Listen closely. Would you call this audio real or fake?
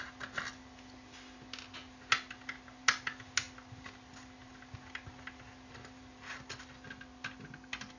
real